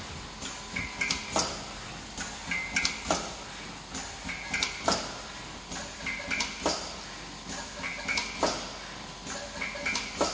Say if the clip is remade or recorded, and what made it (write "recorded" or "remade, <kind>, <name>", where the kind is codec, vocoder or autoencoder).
recorded